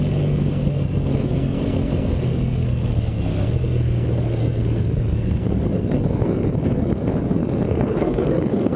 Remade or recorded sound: remade